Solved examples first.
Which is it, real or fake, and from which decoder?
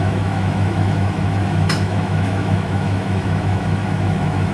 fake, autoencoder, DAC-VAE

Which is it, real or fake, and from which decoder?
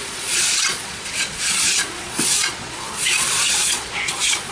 fake, vocoder, Vocos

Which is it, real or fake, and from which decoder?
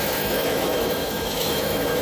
fake, autoencoder, DAC-VAE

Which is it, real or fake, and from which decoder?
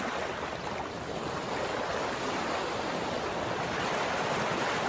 real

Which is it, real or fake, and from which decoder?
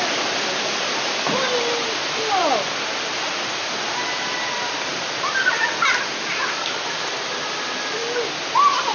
real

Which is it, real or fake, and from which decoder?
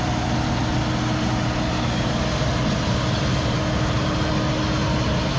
real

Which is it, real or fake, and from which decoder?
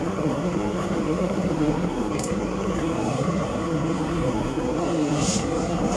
fake, codec, SNAC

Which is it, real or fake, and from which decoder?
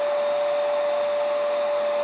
real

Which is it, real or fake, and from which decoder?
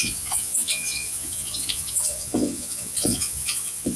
fake, vocoder, Vocos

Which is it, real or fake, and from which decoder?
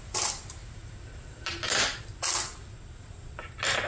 real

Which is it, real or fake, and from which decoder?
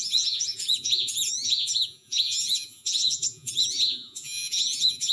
fake, vocoder, Vocos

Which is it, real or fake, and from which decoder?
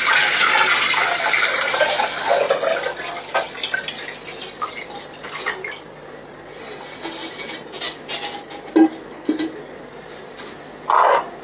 real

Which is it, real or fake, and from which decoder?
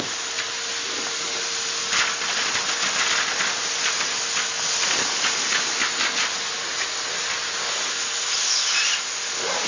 real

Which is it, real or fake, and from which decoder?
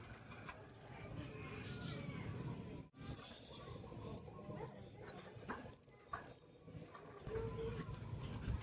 fake, vocoder, BigVGAN v2